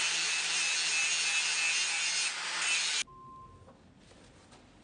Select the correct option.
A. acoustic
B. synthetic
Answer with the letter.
A